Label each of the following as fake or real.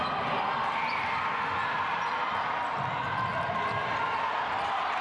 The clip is real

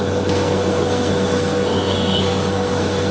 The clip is fake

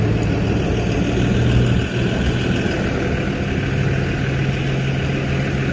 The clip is real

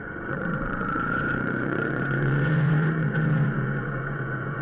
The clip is fake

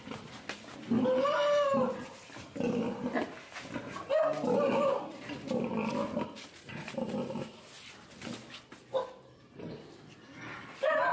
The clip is real